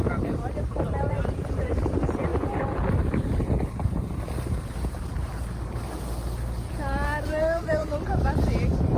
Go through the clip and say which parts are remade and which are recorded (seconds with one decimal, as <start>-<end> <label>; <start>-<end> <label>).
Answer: 0.0-2.3 remade; 2.3-2.9 recorded; 2.9-5.3 remade; 5.3-6.7 recorded; 6.7-9.0 remade